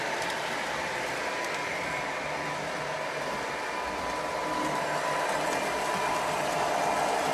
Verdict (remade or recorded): recorded